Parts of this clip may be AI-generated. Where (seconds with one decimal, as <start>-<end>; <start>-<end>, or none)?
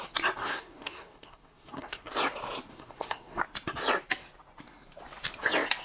0.4-2.1; 2.7-3.4